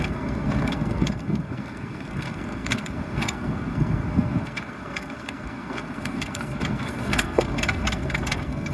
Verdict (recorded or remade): remade